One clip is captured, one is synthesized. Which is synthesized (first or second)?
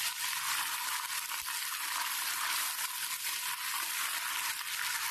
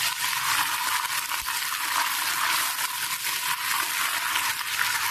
first